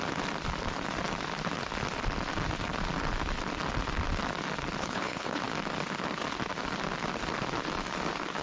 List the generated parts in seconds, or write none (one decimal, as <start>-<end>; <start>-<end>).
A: 4.8-5.4